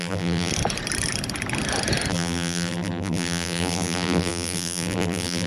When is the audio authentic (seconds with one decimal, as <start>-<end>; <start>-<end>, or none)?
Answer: 0.5-2.1